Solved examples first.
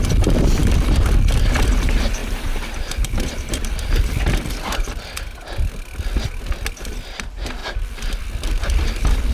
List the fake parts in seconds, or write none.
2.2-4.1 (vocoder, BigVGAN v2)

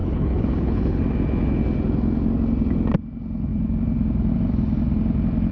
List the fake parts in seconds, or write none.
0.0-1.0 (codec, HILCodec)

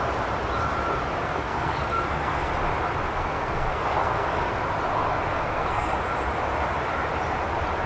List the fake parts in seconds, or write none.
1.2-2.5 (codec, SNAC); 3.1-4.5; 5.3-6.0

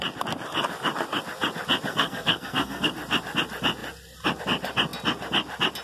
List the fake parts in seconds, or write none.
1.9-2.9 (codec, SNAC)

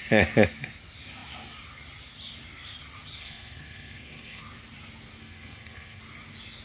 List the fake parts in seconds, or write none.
3.2-4.4 (codec, SNAC); 5.2-6.0

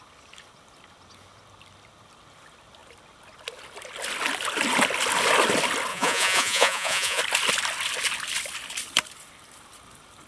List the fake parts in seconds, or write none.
5.9-7.2 (vocoder, Vocos)

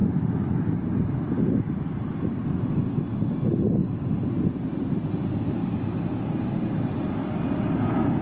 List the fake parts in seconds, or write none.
0.0-2.7 (vocoder, BigVGAN v2); 3.8-5.1; 5.6-7.1